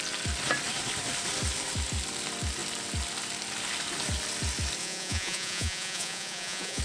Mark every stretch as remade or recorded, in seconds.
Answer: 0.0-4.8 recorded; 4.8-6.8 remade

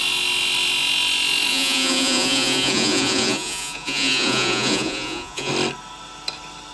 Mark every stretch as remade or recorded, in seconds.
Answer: 0.0-1.5 recorded; 1.5-5.5 remade; 5.5-6.7 recorded

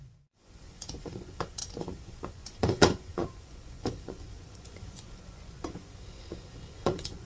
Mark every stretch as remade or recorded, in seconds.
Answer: 0.0-7.3 remade

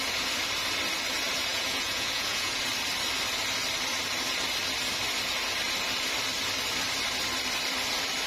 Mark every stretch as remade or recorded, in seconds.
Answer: 0.0-1.5 recorded; 1.5-2.6 remade; 2.6-8.3 recorded